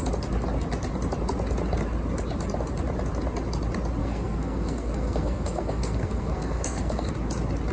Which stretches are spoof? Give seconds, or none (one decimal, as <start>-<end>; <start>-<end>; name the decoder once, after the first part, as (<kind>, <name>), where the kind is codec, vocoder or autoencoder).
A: 4.0-7.1 (codec, SNAC)